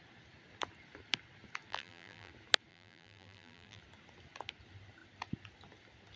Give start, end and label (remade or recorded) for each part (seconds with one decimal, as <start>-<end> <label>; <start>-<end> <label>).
0.0-1.7 recorded; 1.7-2.3 remade; 2.3-2.7 recorded; 2.7-3.8 remade; 3.8-6.2 recorded